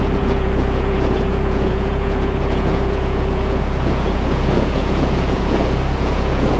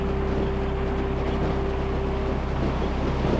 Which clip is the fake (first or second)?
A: first